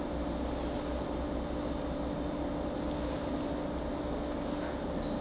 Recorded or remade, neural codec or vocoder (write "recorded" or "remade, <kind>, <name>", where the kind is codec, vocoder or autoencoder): recorded